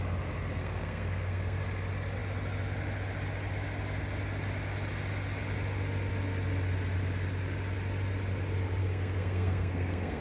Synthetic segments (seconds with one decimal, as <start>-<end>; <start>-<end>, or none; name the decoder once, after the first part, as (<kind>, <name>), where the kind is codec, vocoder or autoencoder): 0.6-1.6 (codec, SNAC); 8.8-10.2